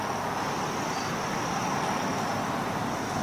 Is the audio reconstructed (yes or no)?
no